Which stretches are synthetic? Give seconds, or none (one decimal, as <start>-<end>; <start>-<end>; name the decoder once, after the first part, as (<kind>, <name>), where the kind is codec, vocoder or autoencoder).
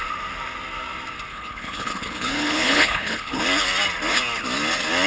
1.3-3.4 (codec, HILCodec)